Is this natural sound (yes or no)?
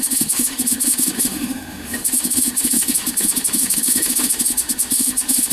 no